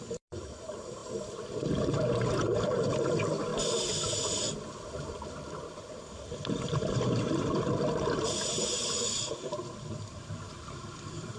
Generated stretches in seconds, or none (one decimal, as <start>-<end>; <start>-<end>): 0.0-3.5; 4.5-11.4